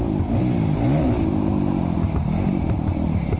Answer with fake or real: real